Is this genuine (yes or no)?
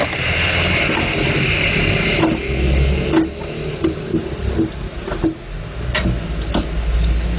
yes